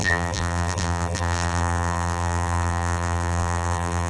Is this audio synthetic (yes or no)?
yes